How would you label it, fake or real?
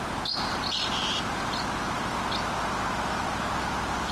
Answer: real